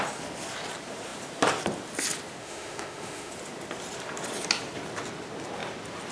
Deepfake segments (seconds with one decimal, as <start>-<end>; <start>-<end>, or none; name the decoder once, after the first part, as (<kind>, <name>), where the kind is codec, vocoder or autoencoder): 2.4-3.3 (autoencoder, DAC-VAE)